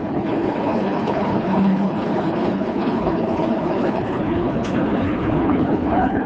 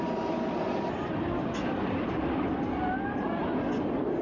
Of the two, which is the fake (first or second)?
first